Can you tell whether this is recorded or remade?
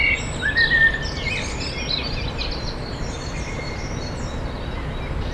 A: recorded